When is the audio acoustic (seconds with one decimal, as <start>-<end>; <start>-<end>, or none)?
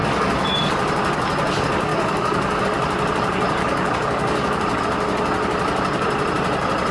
0.7-1.9; 2.6-3.6; 4.8-6.9